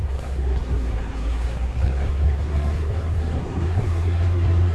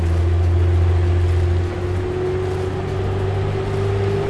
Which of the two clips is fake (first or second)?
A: first